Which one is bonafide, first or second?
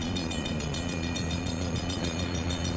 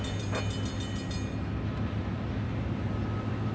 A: second